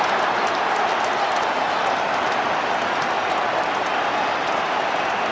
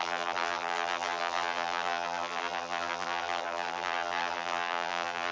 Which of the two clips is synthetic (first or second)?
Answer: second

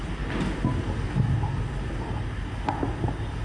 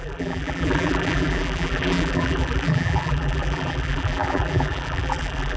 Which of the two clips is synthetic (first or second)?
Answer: second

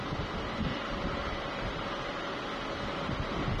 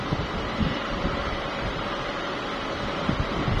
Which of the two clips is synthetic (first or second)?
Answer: second